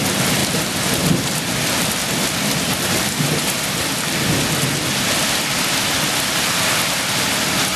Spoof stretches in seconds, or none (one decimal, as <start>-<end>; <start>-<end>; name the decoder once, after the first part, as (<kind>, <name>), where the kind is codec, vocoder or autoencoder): none